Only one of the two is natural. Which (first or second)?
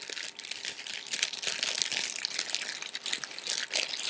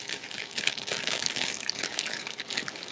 first